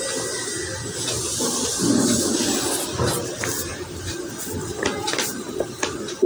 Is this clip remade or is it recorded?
recorded